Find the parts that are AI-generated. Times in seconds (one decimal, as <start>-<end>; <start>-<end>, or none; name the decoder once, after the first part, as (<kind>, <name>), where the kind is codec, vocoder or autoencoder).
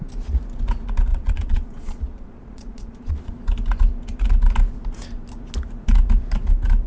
1.1-3.3 (vocoder, Vocos)